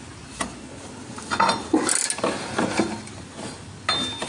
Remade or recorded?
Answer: recorded